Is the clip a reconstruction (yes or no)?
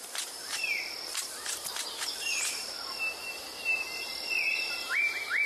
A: yes